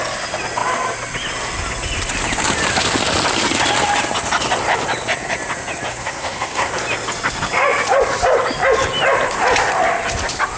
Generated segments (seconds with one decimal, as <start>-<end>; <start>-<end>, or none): 5.9-6.7